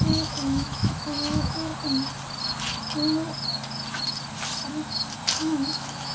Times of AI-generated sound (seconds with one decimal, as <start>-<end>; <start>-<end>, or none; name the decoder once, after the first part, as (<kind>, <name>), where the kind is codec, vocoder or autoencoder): 0.0-1.7 (autoencoder, DAC-VAE); 5.4-6.1